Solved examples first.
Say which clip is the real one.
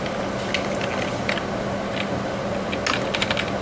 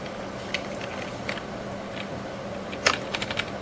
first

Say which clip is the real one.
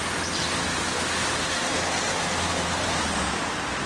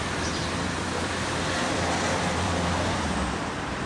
first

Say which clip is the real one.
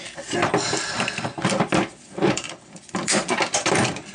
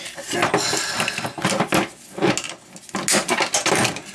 second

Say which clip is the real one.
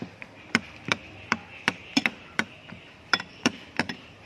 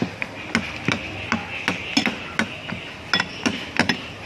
second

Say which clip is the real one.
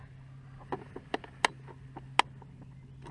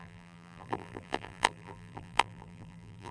first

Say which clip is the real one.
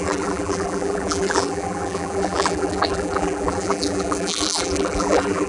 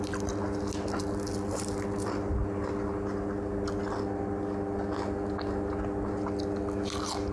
second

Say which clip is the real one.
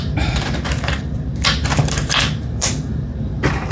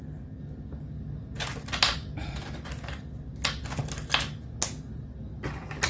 second